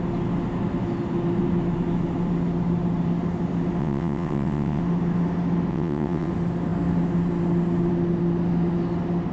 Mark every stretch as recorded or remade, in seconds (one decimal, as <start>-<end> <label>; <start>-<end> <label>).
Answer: 0.0-3.8 recorded; 3.8-4.8 remade; 4.8-5.7 recorded; 5.7-6.3 remade; 6.3-9.3 recorded